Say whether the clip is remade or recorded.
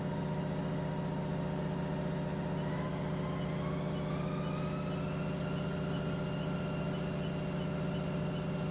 recorded